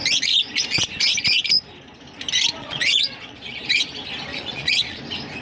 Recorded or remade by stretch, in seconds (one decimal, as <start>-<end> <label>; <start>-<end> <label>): 0.0-2.6 recorded; 2.6-3.8 remade; 3.8-4.3 recorded; 4.3-5.0 remade; 5.0-5.4 recorded